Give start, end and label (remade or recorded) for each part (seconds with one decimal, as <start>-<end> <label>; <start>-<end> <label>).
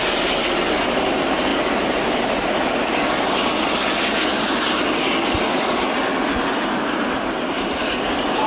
0.0-8.5 recorded